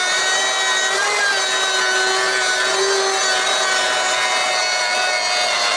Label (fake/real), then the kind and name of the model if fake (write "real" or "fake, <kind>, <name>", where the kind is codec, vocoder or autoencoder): real